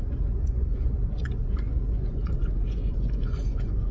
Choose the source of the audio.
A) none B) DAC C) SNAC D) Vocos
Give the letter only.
D